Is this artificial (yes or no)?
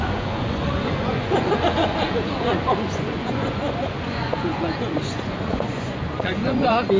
yes